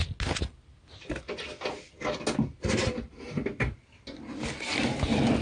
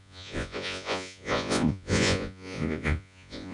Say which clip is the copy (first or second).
second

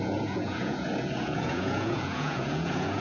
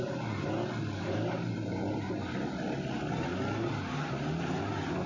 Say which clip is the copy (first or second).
first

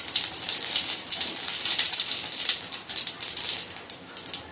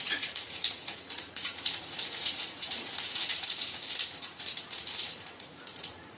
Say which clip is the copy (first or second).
second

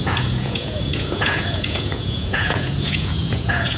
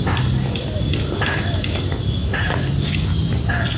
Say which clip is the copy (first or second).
first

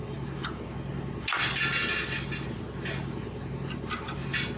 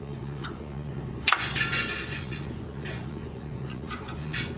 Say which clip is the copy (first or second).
second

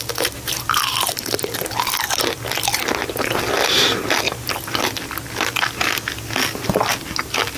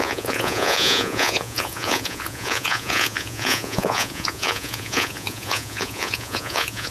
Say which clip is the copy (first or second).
second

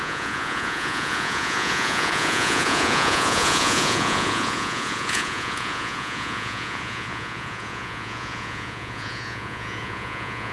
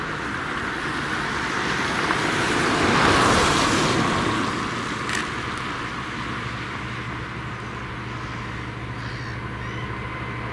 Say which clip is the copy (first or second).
first